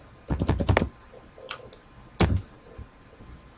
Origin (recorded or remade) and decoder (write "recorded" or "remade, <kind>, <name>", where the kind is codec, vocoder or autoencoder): recorded